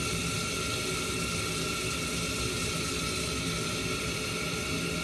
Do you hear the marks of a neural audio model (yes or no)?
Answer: no